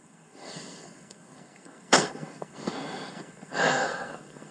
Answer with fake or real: fake